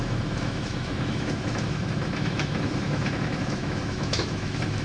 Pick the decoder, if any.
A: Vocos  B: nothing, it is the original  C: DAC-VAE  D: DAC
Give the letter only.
C